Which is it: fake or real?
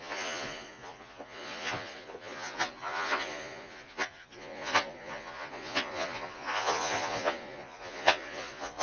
fake